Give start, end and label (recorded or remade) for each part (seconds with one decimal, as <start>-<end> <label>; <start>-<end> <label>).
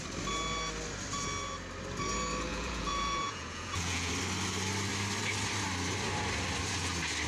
0.0-2.5 recorded; 2.5-4.1 remade; 4.1-7.3 recorded